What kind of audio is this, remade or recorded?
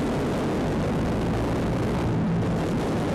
recorded